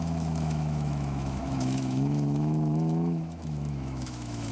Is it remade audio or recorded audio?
remade